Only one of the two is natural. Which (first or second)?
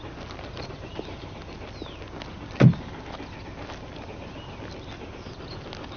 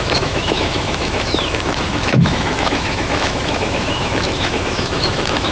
first